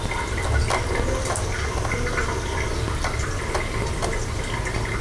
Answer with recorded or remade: recorded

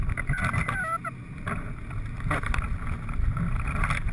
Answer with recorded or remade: recorded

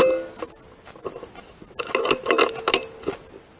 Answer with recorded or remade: recorded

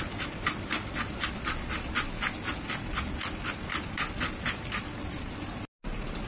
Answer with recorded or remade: recorded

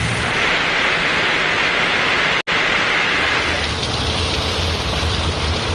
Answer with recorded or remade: recorded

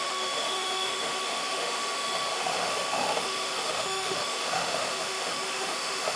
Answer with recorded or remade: remade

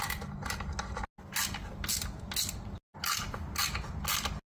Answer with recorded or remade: recorded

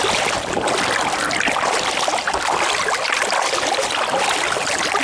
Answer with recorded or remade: recorded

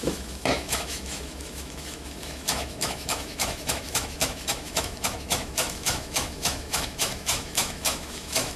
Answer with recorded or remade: remade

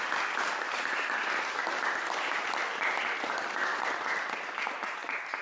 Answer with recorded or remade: recorded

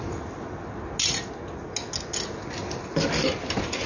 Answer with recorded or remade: recorded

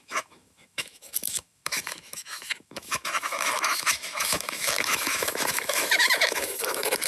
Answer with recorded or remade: remade